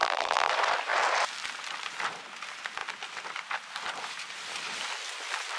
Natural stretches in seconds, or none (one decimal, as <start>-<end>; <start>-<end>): 0.5-5.6